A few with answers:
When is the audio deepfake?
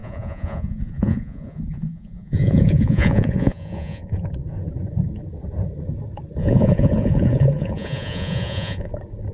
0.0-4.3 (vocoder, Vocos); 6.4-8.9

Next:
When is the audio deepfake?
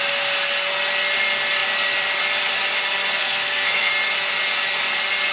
3.2-3.9 (codec, SNAC)